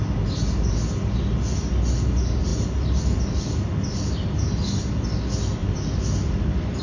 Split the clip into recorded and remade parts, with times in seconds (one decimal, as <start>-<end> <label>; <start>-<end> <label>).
0.0-5.6 recorded; 5.6-6.8 remade